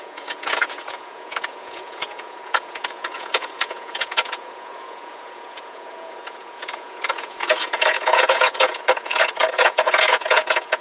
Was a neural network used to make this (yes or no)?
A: yes